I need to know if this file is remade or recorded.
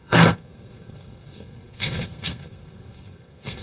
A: remade